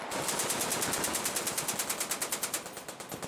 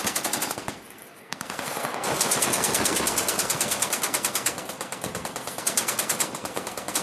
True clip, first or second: first